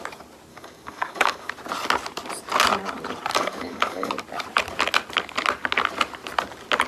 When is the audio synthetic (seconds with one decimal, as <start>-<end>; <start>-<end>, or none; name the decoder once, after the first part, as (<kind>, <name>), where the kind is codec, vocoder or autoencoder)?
0.5-1.5 (codec, DAC); 3.3-4.1